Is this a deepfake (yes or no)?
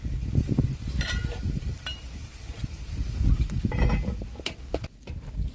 no